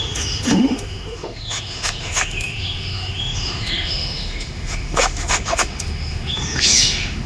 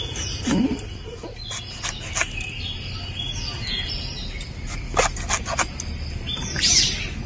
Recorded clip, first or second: second